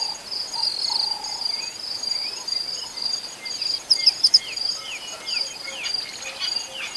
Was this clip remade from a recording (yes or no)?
no